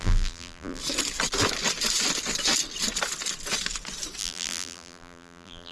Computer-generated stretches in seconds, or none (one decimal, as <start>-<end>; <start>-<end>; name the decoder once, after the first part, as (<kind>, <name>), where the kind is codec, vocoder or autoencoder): 0.0-0.8 (vocoder, BigVGAN v2); 4.2-5.7